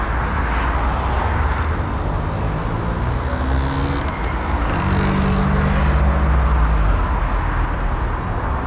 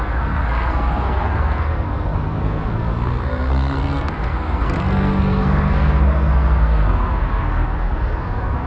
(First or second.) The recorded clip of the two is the first